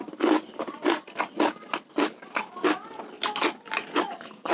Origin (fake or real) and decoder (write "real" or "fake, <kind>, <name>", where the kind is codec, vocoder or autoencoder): real